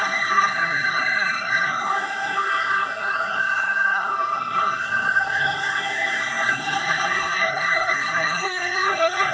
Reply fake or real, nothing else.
fake